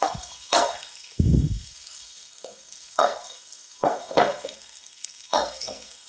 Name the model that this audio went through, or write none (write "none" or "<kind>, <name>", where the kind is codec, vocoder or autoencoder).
codec, SNAC